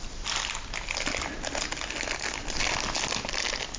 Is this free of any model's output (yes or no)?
yes